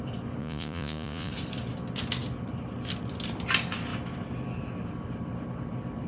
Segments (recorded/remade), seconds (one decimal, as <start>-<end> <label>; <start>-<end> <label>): 0.0-0.4 recorded; 0.4-1.3 remade; 1.3-6.1 recorded